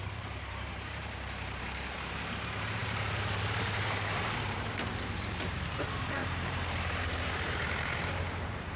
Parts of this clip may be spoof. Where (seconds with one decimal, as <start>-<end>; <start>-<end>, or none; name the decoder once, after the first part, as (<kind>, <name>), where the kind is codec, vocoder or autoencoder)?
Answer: 0.0-8.8 (vocoder, BigVGAN v2)